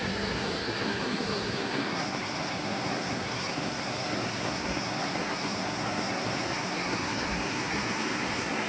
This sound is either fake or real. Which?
fake